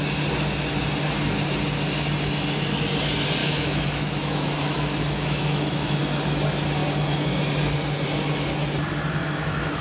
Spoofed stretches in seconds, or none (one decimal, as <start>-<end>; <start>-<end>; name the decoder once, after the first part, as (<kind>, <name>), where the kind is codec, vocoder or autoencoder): 3.4-6.0 (autoencoder, DAC-VAE); 9.2-9.8